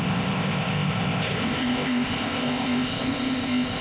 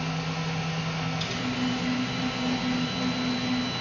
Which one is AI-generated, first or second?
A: first